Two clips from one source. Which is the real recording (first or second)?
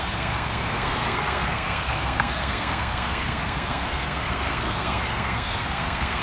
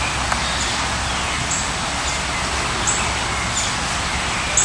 second